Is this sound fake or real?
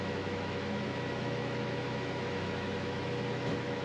fake